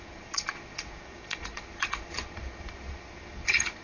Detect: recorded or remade remade